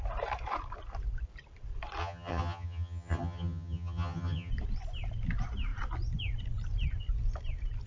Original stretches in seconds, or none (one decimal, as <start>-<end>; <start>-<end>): 0.0-2.0; 4.5-7.9